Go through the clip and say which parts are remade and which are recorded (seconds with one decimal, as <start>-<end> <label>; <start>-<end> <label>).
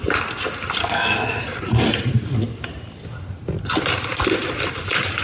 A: 0.0-0.8 recorded; 0.8-1.4 remade; 1.4-5.2 recorded